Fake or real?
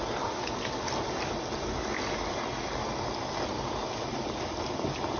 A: real